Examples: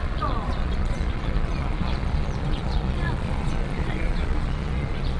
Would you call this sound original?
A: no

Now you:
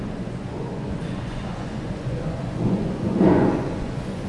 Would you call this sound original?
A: no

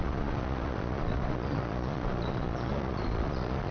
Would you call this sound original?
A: no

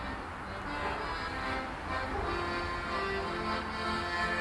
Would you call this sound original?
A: yes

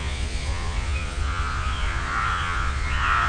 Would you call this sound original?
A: no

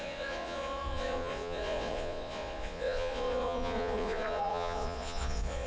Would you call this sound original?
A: no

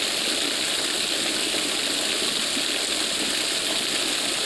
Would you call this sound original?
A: yes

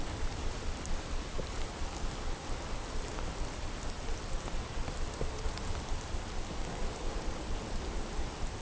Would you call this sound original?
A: yes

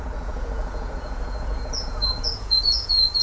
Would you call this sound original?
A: no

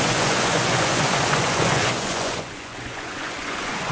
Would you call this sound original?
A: no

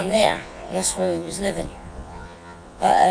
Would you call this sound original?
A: no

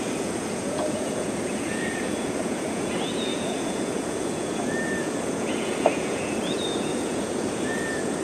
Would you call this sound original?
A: no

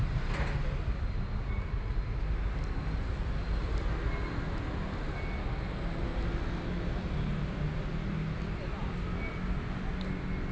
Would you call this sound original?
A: yes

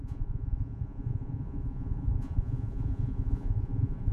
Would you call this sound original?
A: no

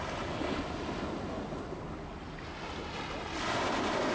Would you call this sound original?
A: yes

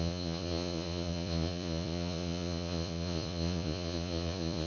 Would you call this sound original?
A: no